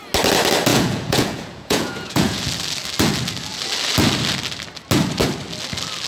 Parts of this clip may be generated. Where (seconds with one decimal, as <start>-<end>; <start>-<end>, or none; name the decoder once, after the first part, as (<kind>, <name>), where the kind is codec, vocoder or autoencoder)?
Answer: 0.7-2.4 (vocoder, Vocos)